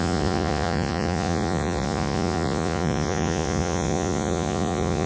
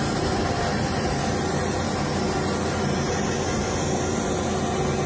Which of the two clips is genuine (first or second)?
second